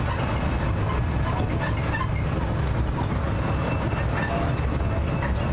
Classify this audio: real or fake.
real